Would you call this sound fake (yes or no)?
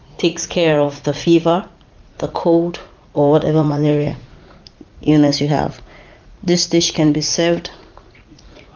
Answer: yes